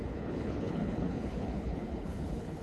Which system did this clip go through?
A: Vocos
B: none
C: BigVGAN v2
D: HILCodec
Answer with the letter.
D